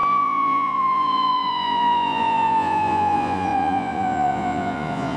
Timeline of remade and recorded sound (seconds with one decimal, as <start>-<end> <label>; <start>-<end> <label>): 0.0-5.2 remade